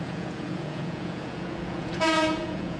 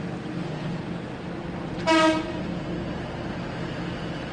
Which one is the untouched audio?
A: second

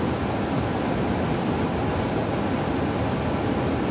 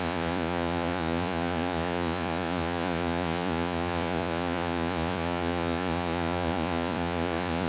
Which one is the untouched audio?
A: first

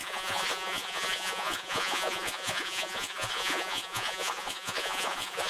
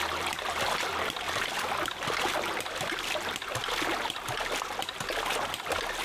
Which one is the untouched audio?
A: second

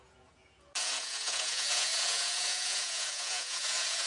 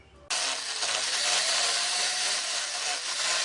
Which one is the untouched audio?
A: second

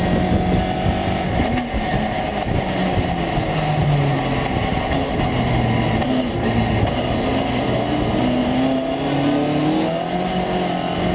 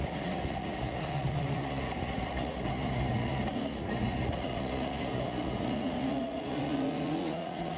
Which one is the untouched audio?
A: first